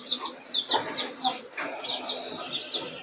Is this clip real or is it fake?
real